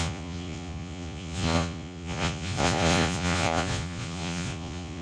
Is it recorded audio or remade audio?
remade